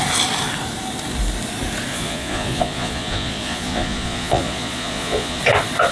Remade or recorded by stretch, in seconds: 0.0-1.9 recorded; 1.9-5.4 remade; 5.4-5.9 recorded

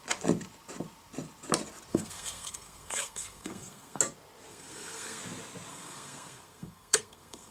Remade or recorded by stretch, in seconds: 0.0-1.9 recorded; 1.9-4.0 remade; 4.0-4.5 recorded; 4.5-5.2 remade; 5.2-5.7 recorded; 5.7-7.5 remade